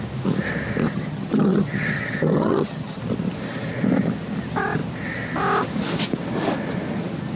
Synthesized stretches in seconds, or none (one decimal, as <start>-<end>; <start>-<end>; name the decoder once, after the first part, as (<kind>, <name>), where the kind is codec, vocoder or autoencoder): 0.8-3.0 (vocoder, HiFi-GAN)